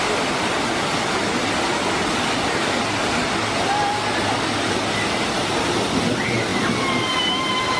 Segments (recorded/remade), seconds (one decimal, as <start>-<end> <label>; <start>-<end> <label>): 0.0-7.8 recorded